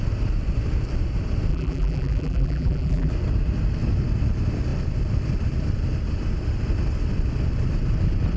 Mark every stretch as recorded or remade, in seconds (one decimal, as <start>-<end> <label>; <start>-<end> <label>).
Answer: 0.0-1.5 recorded; 1.5-3.1 remade; 3.1-8.4 recorded